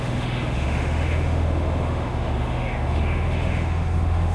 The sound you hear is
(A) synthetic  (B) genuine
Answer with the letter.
A